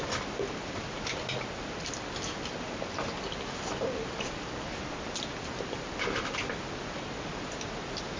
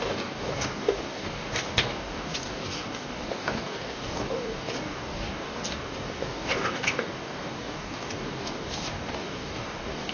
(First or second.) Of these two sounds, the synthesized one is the second